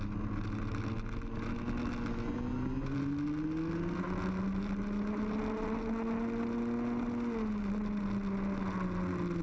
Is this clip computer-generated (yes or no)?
no